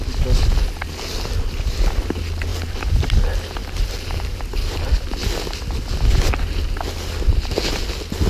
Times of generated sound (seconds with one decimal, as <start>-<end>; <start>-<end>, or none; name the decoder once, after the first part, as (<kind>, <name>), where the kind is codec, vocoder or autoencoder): 2.5-3.1 (vocoder, BigVGAN v2); 3.6-4.4